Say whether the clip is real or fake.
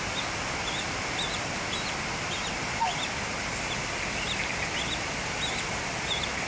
real